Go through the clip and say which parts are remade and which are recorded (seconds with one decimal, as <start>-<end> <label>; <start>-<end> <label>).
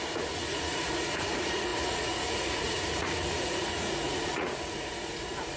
0.0-5.6 remade